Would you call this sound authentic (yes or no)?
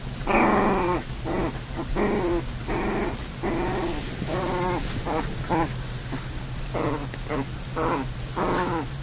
yes